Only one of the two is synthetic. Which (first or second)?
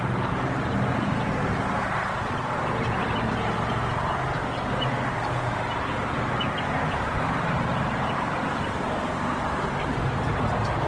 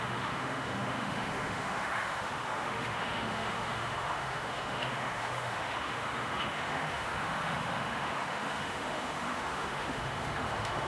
second